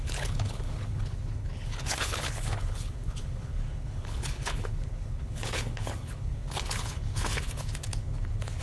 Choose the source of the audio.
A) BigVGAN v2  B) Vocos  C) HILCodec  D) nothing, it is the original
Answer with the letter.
C